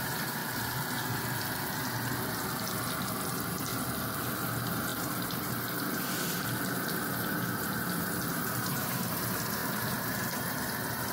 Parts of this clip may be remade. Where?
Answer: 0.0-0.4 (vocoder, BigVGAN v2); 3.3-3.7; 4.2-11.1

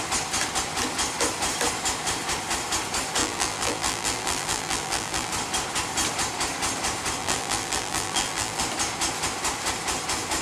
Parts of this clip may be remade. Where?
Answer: 3.2-5.3 (vocoder, BigVGAN v2); 7.2-8.6